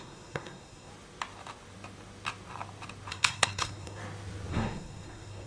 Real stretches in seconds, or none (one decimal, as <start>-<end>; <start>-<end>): 0.9-3.1; 4.0-4.5